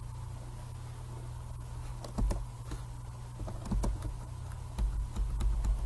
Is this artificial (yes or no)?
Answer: no